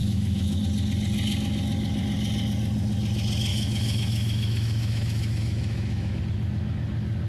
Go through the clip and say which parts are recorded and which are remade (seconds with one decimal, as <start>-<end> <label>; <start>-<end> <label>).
0.0-0.6 remade; 0.6-3.5 recorded; 3.5-6.2 remade; 6.2-7.3 recorded